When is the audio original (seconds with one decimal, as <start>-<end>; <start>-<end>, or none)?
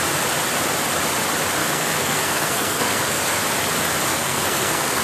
0.0-1.6; 3.4-4.1